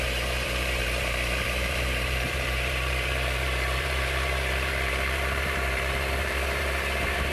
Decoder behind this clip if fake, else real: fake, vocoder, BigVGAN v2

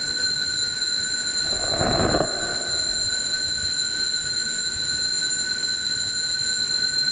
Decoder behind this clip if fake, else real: real